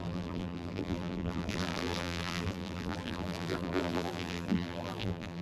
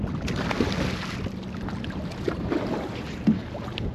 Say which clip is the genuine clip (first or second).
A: second